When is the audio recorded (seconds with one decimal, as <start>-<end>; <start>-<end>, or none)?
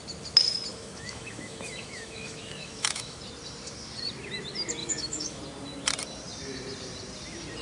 0.0-0.7; 3.2-4.8; 5.4-7.6